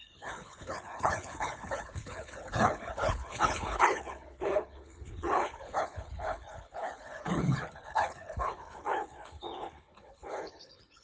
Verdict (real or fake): fake